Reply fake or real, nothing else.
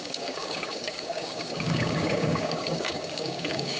fake